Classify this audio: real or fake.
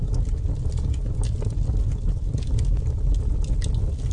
real